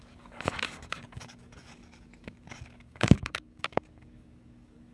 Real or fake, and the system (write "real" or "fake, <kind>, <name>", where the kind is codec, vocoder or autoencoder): fake, codec, DAC